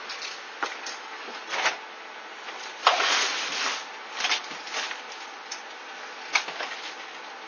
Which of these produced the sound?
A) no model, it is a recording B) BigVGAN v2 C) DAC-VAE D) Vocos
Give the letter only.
A